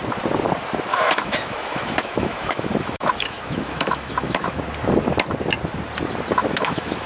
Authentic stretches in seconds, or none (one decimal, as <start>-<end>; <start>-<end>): 0.0-0.9; 4.6-6.4